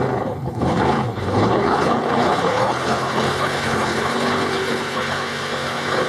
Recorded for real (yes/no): no